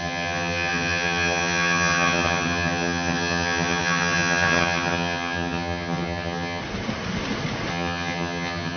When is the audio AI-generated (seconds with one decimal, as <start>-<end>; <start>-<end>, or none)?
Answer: 0.0-6.6; 7.7-8.8